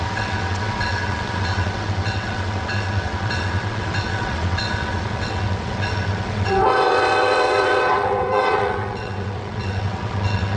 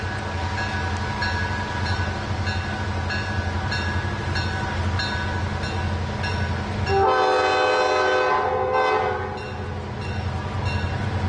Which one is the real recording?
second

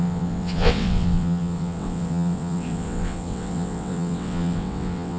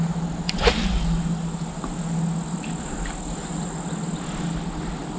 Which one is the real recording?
second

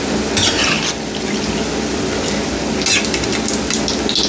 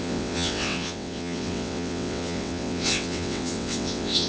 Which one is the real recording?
first